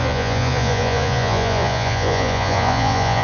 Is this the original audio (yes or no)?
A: no